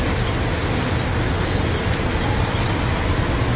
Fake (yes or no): no